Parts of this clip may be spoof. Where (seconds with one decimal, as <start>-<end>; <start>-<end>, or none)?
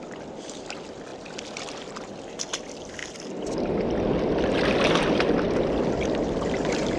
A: none